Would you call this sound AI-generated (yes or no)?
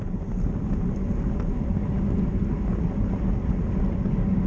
no